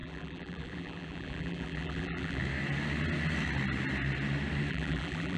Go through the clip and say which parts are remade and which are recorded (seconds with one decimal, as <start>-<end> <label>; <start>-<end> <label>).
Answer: 0.0-2.4 remade; 2.4-4.7 recorded; 4.7-5.4 remade